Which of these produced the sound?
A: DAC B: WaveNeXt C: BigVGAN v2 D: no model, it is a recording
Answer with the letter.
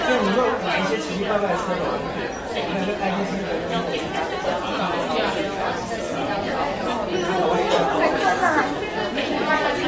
D